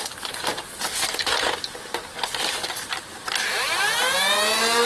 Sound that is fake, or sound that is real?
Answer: real